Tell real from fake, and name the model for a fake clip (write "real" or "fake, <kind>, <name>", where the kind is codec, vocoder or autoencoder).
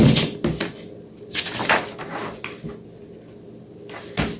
real